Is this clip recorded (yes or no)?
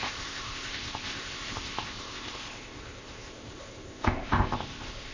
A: no